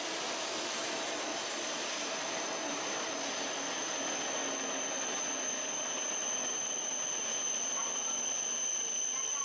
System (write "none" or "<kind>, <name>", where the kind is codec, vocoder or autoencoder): none